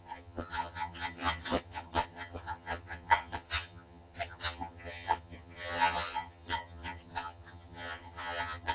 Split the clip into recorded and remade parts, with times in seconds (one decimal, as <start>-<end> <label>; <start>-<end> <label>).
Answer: 0.0-8.7 remade